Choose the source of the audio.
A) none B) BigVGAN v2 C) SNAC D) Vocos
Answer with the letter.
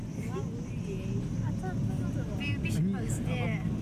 A